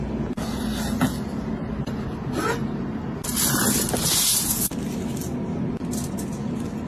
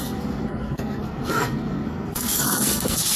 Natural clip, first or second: first